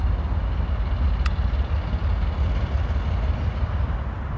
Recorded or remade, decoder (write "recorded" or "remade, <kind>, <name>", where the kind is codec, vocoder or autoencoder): recorded